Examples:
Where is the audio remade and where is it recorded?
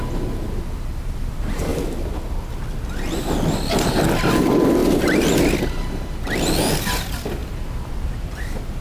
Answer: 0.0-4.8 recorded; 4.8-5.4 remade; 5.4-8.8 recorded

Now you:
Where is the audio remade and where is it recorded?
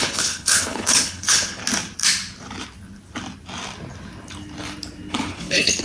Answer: 0.0-1.6 remade; 1.6-5.1 recorded; 5.1-5.8 remade